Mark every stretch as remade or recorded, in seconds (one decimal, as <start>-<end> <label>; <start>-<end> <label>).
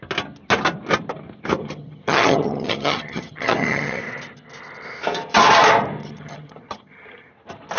0.0-1.6 recorded; 1.6-4.0 remade; 4.0-6.0 recorded; 6.0-7.3 remade; 7.3-7.8 recorded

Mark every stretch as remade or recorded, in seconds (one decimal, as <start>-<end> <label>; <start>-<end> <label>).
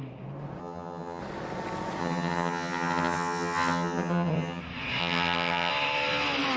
0.0-0.6 recorded; 0.6-1.2 remade; 1.2-2.0 recorded; 2.0-4.6 remade; 4.6-5.0 recorded; 5.0-5.7 remade; 5.7-6.6 recorded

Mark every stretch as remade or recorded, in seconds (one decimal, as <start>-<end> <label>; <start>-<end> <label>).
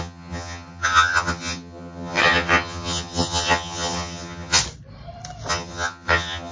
0.0-4.6 remade; 4.6-5.5 recorded; 5.5-6.5 remade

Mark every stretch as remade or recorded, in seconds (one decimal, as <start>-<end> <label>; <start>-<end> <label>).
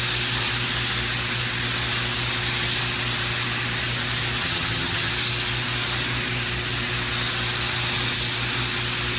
0.0-4.4 recorded; 4.4-5.1 remade; 5.1-9.2 recorded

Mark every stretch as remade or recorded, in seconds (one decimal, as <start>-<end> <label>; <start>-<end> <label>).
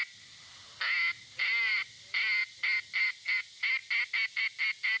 0.0-5.0 recorded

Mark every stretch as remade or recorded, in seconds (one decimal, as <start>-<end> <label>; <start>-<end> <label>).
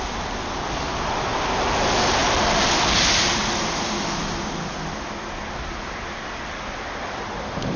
0.0-7.8 recorded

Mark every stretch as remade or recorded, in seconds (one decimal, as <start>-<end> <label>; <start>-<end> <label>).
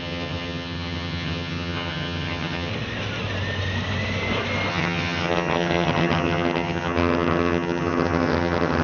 0.0-2.7 remade; 2.7-4.7 recorded; 4.7-8.8 remade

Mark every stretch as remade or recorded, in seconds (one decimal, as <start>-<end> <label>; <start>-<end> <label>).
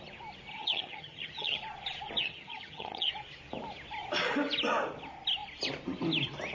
0.0-0.5 recorded; 0.5-1.6 remade; 1.6-2.2 recorded; 2.2-3.1 remade; 3.1-6.5 recorded